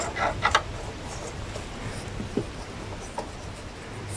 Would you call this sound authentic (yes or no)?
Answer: yes